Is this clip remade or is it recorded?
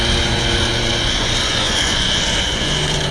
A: remade